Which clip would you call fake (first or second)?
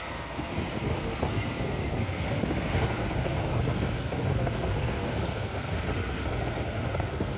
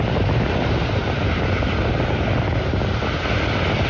first